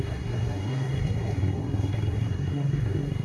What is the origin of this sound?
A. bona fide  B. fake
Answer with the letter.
B